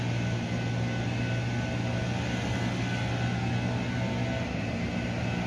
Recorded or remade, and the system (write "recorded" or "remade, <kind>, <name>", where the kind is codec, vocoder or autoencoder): recorded